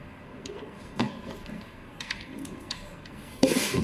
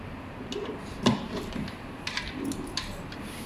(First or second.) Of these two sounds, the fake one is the first